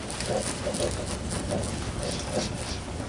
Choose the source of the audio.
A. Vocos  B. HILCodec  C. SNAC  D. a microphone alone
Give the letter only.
D